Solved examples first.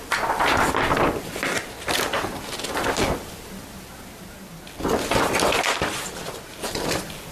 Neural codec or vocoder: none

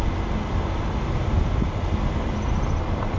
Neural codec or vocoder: none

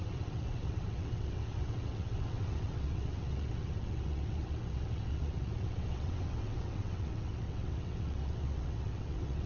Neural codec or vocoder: vocoder, WaveNeXt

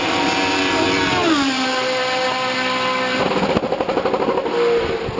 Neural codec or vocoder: none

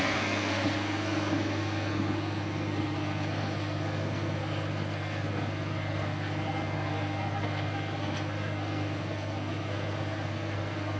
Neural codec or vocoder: codec, SNAC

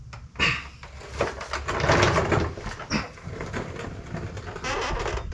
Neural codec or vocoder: none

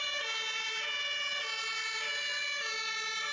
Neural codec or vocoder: none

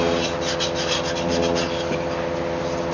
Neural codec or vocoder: none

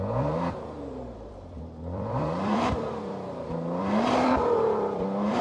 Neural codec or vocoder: vocoder, BigVGAN v2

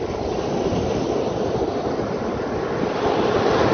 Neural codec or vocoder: none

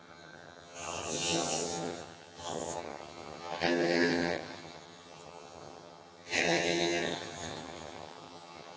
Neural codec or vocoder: vocoder, HiFi-GAN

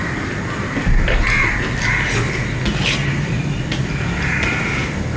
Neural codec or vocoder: none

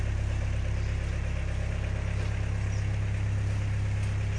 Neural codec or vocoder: none